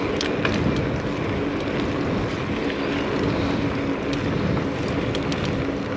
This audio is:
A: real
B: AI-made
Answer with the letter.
A